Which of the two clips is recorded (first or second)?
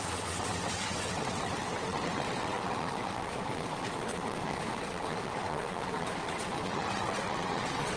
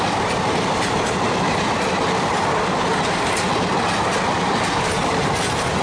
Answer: second